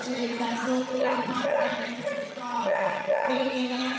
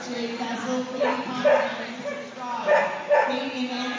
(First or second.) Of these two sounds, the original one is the second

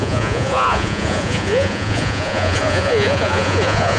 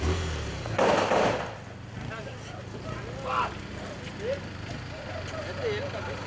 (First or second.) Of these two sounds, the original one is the second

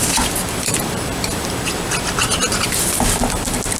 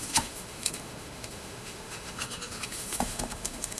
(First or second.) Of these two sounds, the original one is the first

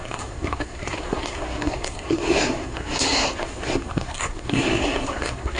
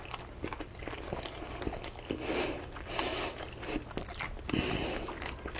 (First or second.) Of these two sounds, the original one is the second